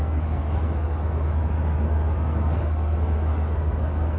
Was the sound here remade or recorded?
remade